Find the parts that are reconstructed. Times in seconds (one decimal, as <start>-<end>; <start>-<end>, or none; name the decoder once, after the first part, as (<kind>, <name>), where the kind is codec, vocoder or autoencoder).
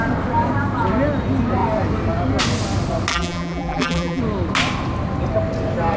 3.1-4.2 (vocoder, BigVGAN v2)